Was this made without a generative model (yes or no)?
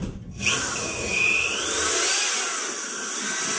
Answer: yes